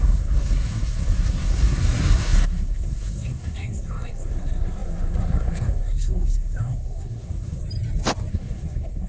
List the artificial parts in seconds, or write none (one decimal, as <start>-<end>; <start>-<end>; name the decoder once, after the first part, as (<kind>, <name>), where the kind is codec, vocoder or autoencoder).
0.0-7.6 (codec, SNAC); 8.3-9.1